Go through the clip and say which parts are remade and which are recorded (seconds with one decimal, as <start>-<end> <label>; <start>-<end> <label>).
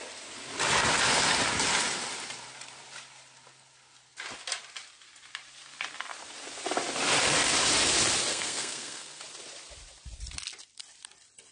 0.0-8.3 recorded; 8.3-9.2 remade; 9.2-11.5 recorded